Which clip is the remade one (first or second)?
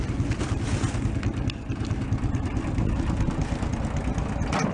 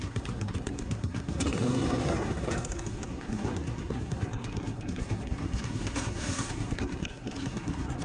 second